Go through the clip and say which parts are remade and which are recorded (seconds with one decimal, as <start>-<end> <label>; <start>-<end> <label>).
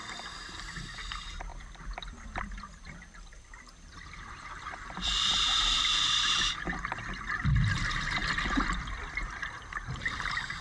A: 0.0-1.5 recorded; 1.5-5.9 remade; 5.9-10.6 recorded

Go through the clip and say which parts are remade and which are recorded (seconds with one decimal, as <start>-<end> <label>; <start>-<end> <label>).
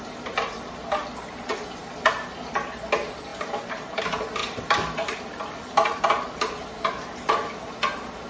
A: 0.0-3.3 recorded; 3.3-4.0 remade; 4.0-4.4 recorded; 4.4-6.0 remade; 6.0-8.3 recorded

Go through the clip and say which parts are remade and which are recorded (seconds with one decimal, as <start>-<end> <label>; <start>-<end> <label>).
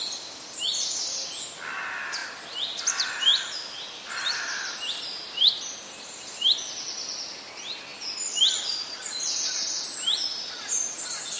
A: 0.0-11.4 recorded